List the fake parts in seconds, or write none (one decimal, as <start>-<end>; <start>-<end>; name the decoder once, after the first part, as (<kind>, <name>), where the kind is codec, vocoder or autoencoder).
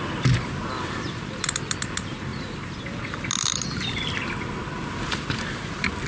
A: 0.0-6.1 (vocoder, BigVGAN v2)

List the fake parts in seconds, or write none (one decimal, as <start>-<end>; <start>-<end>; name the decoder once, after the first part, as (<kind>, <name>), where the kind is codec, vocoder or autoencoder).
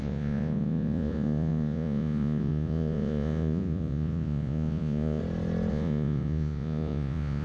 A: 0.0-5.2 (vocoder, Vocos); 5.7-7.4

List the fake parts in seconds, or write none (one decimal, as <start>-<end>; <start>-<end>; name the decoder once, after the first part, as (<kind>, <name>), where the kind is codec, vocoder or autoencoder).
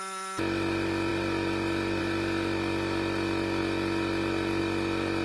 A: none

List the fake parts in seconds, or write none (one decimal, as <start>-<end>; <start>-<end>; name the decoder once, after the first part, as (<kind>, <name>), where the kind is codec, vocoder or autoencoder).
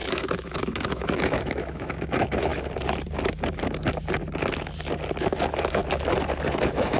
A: 0.0-2.5 (autoencoder, DAC-VAE); 5.2-5.8; 6.5-7.0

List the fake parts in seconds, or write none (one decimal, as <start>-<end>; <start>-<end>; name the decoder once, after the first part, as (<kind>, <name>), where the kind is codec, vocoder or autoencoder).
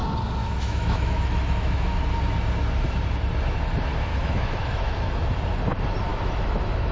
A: 0.4-2.0 (autoencoder, DAC-VAE); 4.1-5.1; 6.1-6.9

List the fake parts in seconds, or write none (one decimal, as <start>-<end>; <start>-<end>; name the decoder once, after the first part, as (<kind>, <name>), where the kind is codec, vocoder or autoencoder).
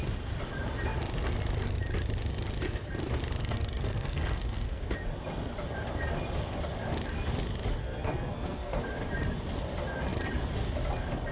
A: 3.4-4.8 (codec, SNAC); 7.8-8.8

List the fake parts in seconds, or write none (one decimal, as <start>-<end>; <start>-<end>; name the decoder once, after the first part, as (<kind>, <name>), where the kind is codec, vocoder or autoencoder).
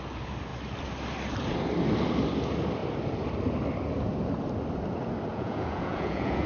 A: 5.3-6.5 (vocoder, Vocos)